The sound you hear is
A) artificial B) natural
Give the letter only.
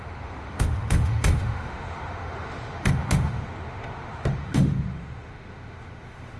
A